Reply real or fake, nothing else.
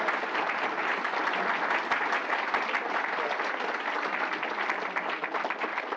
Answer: real